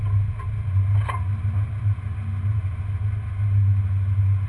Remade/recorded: recorded